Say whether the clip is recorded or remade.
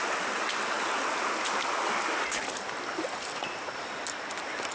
recorded